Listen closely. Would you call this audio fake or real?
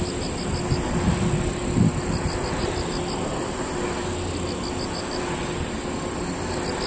real